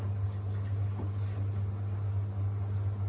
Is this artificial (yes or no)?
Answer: no